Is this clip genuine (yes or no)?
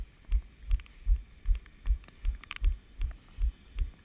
yes